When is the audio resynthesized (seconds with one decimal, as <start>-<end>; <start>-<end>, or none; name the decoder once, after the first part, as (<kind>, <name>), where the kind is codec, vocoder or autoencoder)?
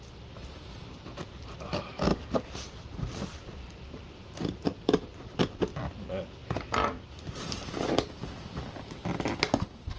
2.1-5.6 (vocoder, BigVGAN v2); 6.8-7.4